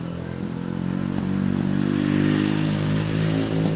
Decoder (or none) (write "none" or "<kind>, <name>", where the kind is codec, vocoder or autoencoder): none